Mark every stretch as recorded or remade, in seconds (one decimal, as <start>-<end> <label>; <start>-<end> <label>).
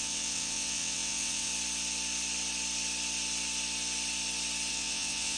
0.0-1.5 remade; 1.5-4.7 recorded; 4.7-5.4 remade